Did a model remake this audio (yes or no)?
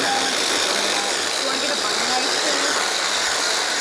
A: no